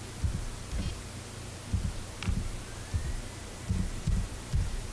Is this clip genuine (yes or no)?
yes